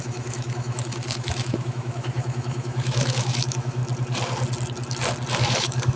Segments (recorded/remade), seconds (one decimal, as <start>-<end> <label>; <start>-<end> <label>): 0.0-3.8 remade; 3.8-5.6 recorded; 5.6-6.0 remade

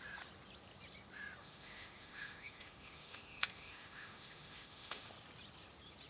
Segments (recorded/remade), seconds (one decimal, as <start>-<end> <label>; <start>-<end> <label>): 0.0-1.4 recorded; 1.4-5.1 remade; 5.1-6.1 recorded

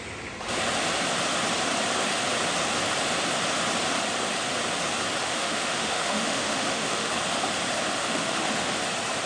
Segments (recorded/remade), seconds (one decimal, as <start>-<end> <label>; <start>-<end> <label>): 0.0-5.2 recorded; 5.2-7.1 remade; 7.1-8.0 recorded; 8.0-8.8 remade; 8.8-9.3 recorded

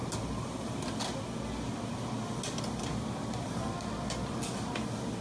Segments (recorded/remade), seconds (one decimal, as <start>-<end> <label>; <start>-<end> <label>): 0.0-5.2 recorded